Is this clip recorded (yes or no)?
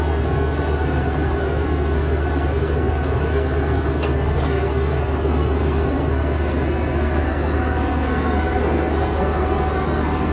no